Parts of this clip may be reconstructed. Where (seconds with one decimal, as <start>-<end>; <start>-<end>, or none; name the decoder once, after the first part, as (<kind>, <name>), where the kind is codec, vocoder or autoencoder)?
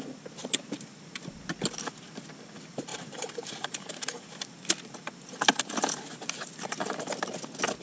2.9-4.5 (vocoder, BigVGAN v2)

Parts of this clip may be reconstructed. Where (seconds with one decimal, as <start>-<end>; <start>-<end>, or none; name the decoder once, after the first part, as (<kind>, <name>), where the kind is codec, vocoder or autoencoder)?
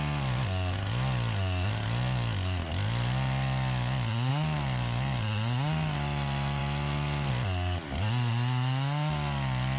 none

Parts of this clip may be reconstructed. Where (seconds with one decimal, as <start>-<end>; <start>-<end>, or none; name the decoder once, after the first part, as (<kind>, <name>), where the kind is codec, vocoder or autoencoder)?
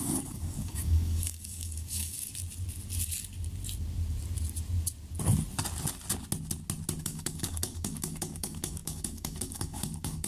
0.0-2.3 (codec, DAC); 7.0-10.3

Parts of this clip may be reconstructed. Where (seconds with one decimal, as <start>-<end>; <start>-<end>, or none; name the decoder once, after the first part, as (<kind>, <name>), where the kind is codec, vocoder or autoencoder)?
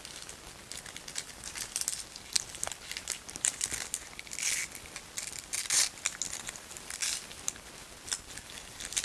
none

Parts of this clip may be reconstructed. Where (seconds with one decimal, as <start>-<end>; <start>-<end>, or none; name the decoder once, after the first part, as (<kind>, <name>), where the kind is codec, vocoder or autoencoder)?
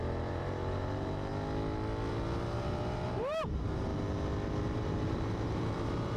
0.0-1.3 (vocoder, BigVGAN v2); 2.1-3.9; 4.6-6.2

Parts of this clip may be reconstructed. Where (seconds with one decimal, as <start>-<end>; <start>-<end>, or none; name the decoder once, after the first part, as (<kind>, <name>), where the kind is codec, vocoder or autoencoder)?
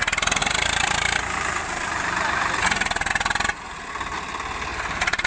0.4-3.1 (vocoder, BigVGAN v2)